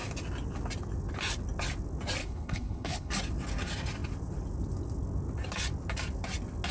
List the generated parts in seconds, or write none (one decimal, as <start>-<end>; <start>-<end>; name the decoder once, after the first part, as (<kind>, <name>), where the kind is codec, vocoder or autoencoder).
2.2-3.1 (codec, HILCodec)